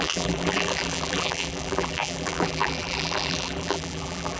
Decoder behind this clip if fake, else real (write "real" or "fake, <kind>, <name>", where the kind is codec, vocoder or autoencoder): fake, vocoder, BigVGAN v2